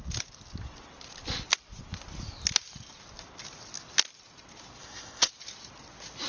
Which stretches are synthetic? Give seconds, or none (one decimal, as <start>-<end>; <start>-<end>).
4.8-5.3